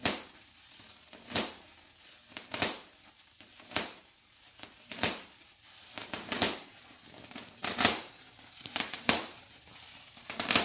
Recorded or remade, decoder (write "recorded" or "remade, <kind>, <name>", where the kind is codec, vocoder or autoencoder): remade, vocoder, BigVGAN v2